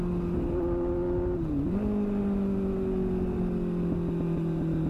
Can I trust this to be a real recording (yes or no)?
yes